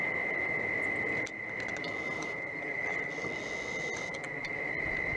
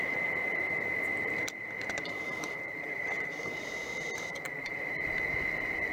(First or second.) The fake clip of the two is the second